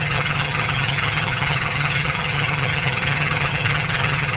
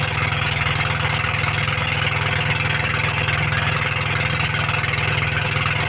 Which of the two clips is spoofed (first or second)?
first